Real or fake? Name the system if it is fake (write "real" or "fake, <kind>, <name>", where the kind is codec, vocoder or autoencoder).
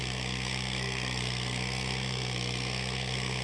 fake, codec, SNAC